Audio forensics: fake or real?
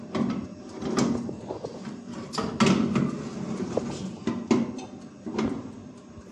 real